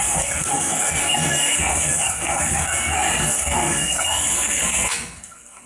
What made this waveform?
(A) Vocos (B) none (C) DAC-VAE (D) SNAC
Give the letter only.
D